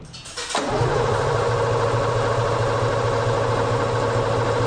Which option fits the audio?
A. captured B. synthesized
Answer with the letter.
A